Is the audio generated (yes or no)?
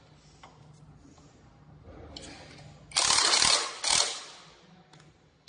no